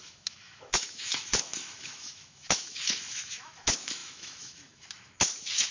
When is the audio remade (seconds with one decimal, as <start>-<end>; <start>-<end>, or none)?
0.0-5.7